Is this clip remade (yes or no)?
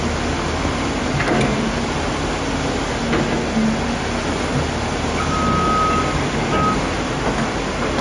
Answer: no